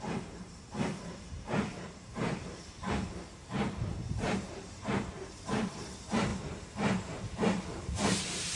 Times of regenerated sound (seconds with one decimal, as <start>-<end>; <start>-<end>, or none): 0.0-8.6